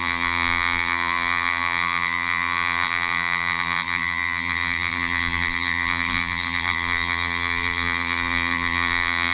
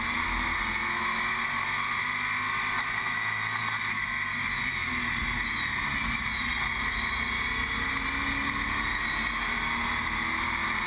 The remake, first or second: first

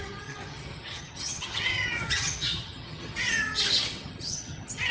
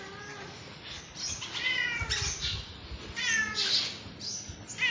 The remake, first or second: first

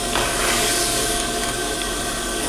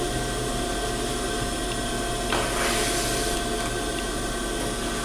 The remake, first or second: first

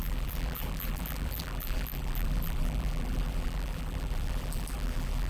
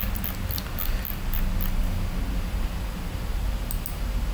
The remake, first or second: first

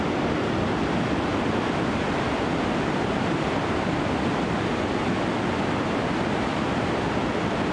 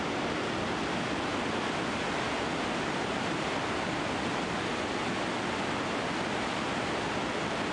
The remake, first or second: first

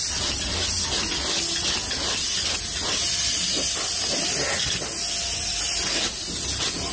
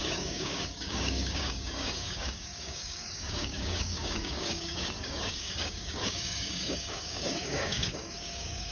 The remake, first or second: second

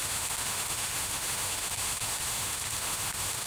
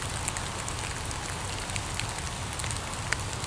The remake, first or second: first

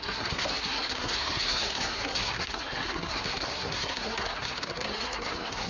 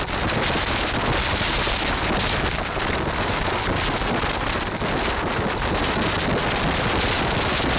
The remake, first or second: first